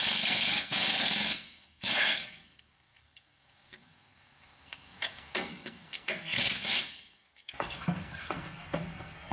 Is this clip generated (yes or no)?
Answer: yes